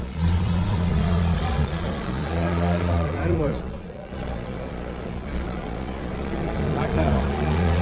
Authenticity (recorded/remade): remade